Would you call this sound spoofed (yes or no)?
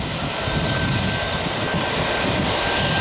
no